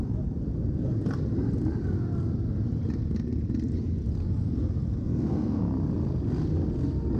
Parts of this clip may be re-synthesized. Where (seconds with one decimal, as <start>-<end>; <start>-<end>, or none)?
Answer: 5.0-5.6

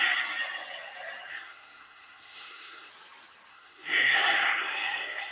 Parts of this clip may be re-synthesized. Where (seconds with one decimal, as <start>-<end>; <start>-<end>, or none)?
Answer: 1.3-2.9; 3.5-5.3